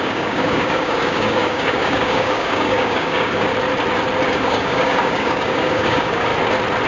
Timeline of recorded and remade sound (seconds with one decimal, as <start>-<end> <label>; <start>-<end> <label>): 0.0-3.5 remade; 3.5-4.3 recorded; 4.3-6.3 remade; 6.3-6.9 recorded